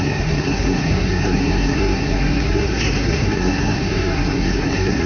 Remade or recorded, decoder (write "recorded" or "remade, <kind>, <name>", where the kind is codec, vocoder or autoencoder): remade, codec, SNAC